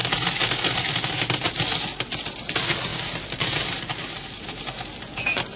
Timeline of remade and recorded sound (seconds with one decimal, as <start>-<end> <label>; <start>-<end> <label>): 0.0-2.5 remade; 2.5-2.9 recorded; 2.9-3.8 remade; 3.8-5.6 recorded